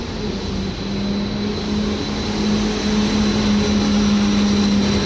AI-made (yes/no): no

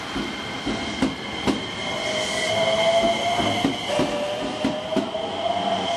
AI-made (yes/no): no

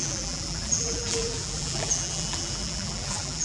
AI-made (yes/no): yes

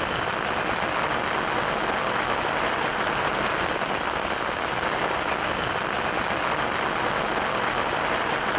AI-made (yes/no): no